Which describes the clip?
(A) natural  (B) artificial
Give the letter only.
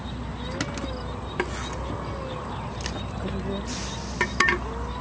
A